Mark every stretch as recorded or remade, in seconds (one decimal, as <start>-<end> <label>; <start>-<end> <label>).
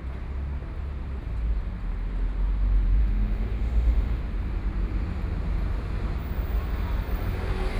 0.0-3.0 recorded; 3.0-4.2 remade; 4.2-7.8 recorded